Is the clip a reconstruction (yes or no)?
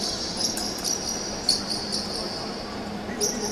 no